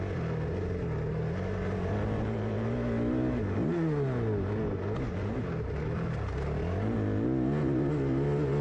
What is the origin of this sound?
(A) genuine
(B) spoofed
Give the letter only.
A